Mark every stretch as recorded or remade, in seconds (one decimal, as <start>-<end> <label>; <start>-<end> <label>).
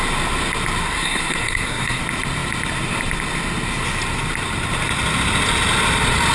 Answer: 0.0-0.8 recorded; 0.8-2.0 remade; 2.0-6.3 recorded